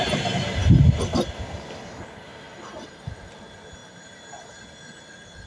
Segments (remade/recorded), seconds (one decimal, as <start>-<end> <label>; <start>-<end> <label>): 0.0-5.5 recorded